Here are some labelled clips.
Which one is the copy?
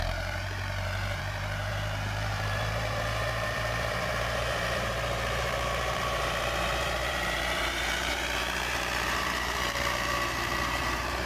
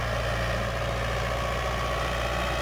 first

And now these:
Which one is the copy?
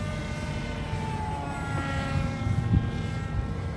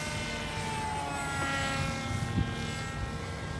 first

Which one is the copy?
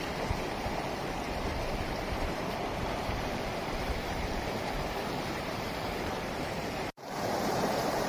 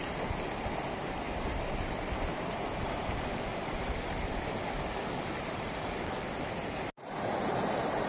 first